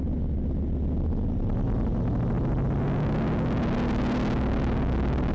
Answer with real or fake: real